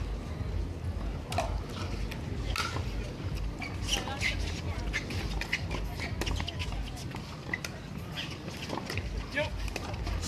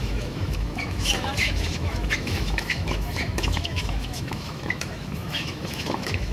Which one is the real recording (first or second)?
first